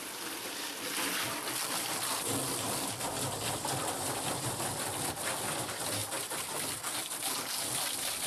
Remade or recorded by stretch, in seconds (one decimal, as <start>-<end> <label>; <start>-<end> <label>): 0.0-6.0 remade; 6.0-8.3 recorded